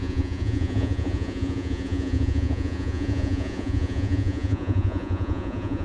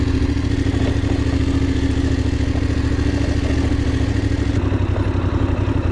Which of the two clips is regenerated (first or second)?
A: first